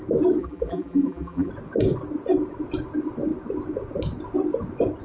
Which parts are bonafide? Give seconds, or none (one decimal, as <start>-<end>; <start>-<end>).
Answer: 0.0-0.4; 1.5-5.0